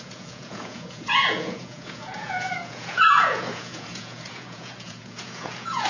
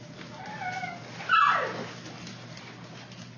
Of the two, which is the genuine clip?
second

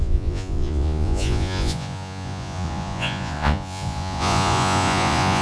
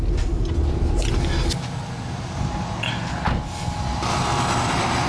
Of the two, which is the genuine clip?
second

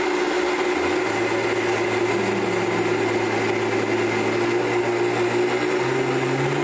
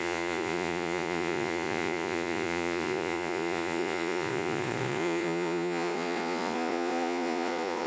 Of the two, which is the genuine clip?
first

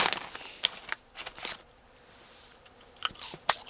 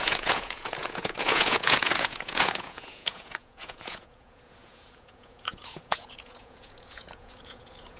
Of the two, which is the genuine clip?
first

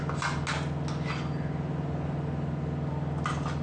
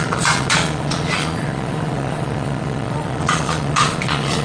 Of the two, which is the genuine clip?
first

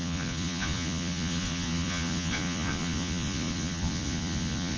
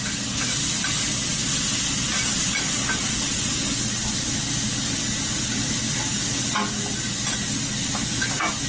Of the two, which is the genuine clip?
second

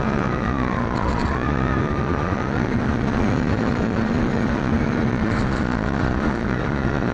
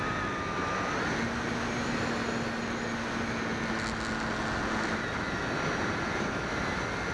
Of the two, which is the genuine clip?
second